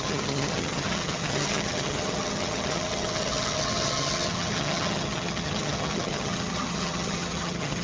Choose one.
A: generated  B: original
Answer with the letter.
A